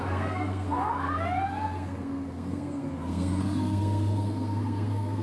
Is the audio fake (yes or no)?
yes